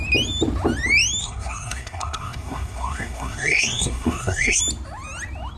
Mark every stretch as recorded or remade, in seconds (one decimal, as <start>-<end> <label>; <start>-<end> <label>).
0.0-1.2 recorded; 1.2-4.6 remade; 4.6-5.6 recorded